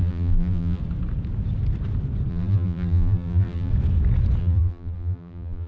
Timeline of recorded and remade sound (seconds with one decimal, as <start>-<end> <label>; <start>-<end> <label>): 0.0-0.8 remade; 0.8-2.3 recorded; 2.3-3.7 remade; 3.7-4.4 recorded; 4.4-5.7 remade